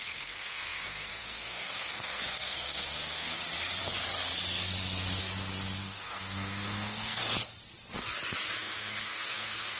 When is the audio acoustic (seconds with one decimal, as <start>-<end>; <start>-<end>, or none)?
3.4-5.8; 7.2-8.6